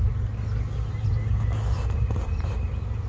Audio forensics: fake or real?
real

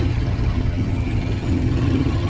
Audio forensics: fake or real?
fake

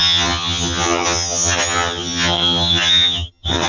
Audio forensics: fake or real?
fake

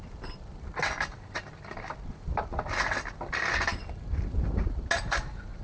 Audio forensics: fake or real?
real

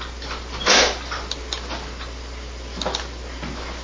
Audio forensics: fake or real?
real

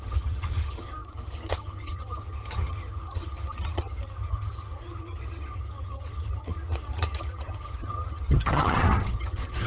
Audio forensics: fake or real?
fake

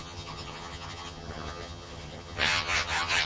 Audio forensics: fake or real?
fake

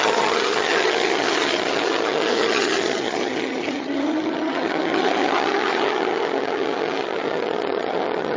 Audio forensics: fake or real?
fake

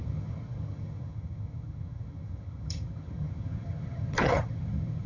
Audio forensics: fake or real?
fake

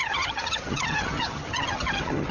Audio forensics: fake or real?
fake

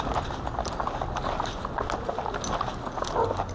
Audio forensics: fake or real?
real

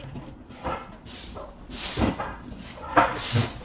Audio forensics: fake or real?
real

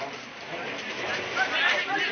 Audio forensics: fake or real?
real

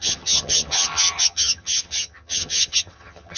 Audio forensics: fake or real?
fake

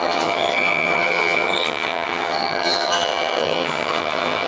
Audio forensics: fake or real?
fake